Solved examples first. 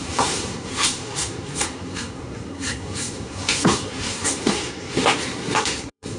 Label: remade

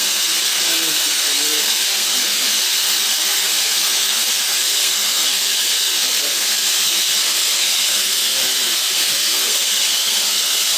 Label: remade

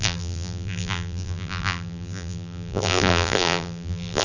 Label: remade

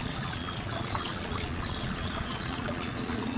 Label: remade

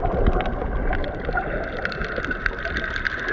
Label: remade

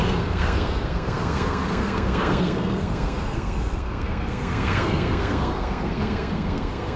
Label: remade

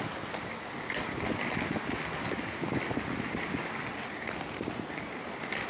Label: recorded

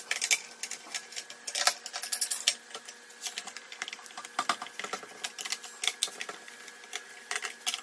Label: recorded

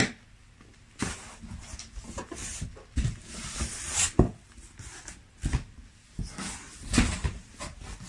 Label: recorded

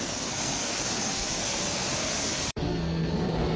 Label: remade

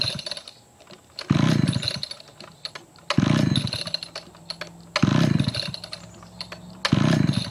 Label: recorded